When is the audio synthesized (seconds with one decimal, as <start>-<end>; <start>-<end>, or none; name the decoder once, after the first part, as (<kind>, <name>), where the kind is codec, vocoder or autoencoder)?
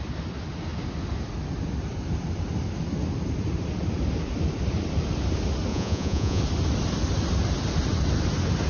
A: 5.7-6.4 (vocoder, Vocos)